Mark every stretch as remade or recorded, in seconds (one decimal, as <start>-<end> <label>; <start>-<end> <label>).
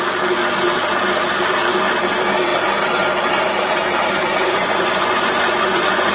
0.0-4.3 recorded; 4.3-6.1 remade